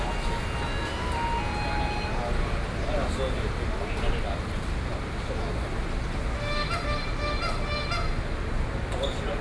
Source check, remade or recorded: recorded